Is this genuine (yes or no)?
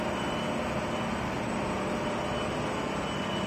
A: yes